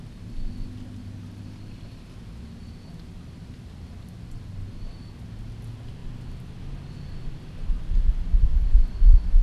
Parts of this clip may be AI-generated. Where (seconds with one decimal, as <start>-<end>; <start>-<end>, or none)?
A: none